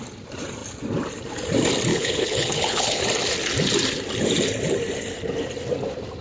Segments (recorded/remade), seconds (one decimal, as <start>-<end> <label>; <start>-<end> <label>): 0.0-1.9 recorded; 1.9-3.0 remade; 3.0-6.2 recorded